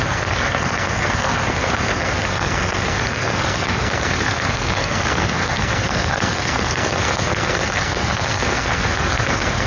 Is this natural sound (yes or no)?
no